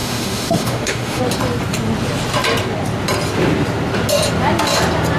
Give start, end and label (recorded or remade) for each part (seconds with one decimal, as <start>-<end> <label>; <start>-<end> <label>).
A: 0.0-1.2 remade; 1.2-5.2 recorded